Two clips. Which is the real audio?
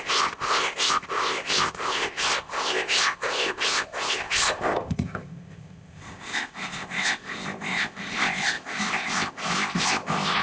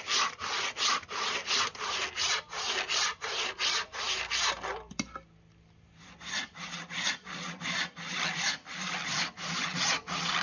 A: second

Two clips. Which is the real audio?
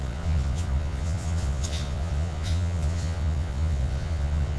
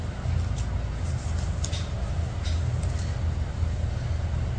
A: second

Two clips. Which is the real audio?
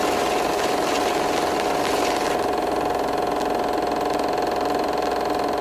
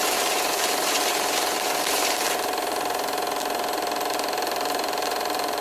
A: first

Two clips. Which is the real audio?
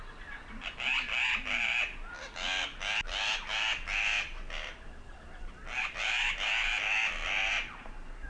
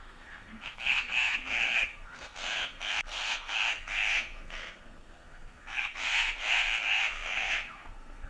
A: first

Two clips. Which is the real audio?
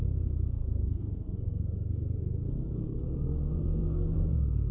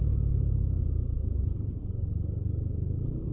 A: second